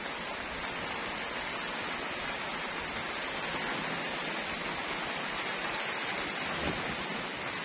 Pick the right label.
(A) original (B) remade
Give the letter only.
A